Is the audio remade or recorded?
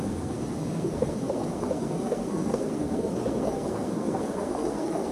remade